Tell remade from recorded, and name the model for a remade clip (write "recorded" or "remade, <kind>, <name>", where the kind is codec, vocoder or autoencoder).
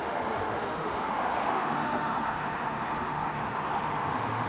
remade, autoencoder, DAC-VAE